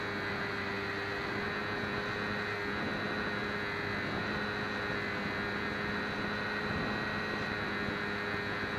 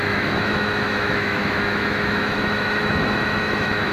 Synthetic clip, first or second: second